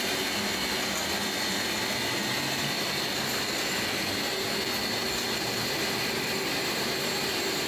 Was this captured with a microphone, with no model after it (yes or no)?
yes